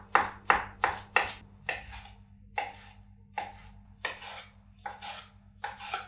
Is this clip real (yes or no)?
yes